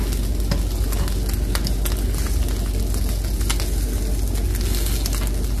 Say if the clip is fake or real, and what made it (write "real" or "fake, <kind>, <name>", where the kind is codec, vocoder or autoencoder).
real